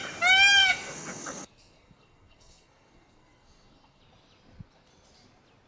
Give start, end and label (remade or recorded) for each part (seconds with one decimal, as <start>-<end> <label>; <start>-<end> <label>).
0.0-0.6 recorded; 0.6-4.0 remade; 4.0-5.7 recorded